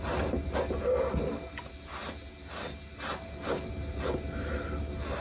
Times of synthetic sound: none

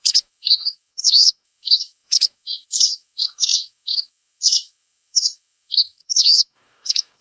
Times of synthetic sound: 0.0-7.2 (codec, DAC)

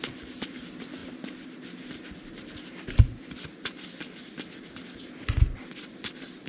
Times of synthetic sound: none

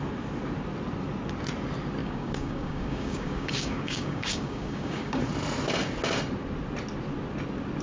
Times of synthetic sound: 2.0-5.2 (codec, DAC)